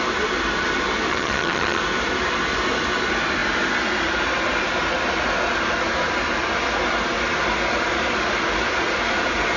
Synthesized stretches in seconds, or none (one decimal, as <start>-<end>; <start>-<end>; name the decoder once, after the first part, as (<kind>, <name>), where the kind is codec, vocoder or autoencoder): 1.1-1.8 (vocoder, HiFi-GAN)